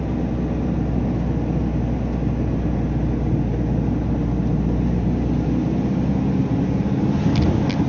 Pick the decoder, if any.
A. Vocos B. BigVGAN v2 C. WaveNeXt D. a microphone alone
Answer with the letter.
D